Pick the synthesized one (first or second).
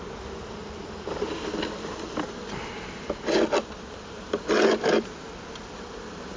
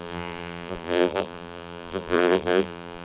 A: second